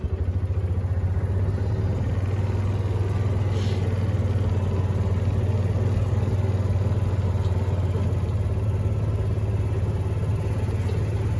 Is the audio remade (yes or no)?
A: no